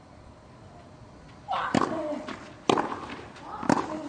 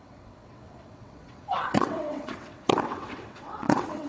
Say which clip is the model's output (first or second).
second